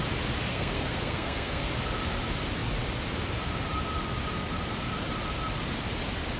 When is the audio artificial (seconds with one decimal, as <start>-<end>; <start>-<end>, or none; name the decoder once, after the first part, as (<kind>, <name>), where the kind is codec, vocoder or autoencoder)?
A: 0.5-1.7 (codec, SNAC)